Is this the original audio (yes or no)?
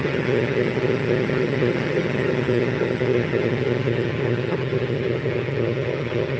no